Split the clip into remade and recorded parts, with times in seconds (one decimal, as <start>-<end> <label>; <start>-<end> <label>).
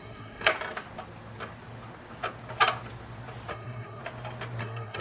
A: 0.0-0.5 remade; 0.5-3.5 recorded; 3.5-4.0 remade; 4.0-4.6 recorded; 4.6-5.0 remade